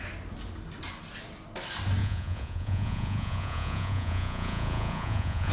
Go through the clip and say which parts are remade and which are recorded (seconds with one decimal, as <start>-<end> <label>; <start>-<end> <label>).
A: 0.0-2.0 recorded; 2.0-5.5 remade